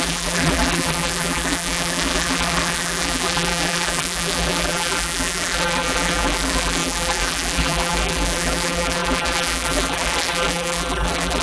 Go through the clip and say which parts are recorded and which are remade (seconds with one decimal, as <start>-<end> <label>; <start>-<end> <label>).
0.0-11.4 remade